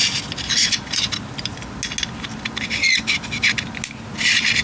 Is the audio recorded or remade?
recorded